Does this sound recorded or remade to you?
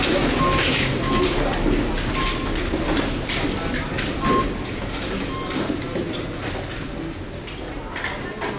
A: recorded